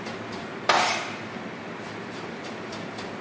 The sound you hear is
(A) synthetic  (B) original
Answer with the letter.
A